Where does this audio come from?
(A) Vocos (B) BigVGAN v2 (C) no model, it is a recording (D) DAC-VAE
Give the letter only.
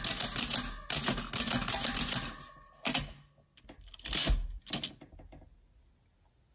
C